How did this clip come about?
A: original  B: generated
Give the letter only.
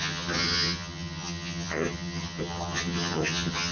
B